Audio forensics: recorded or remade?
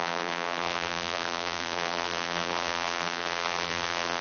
remade